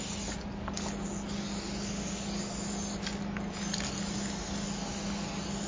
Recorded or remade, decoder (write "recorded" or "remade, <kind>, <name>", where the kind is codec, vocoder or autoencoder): recorded